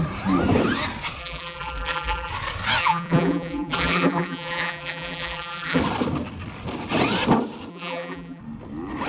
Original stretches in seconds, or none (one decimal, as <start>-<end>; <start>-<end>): 0.0-1.2; 2.3-2.8; 5.8-7.7; 8.4-9.1

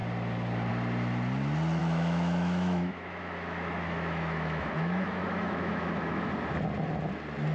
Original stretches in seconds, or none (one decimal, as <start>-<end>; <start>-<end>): 0.0-1.8; 6.3-7.5

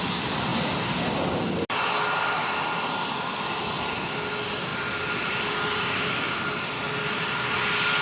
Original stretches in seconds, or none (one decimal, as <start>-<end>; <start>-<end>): 0.0-8.0

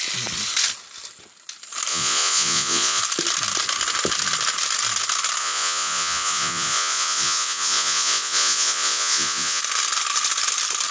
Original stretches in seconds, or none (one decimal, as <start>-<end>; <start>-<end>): 0.0-1.9; 3.0-5.4; 9.6-10.9